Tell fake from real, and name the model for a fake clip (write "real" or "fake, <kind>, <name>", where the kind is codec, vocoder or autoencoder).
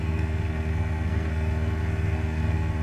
fake, codec, SNAC